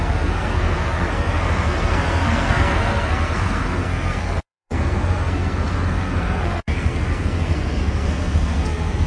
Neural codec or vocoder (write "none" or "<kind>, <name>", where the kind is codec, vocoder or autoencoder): codec, SNAC